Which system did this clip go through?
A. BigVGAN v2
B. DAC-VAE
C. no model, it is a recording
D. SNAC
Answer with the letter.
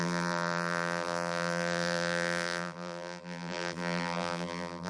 A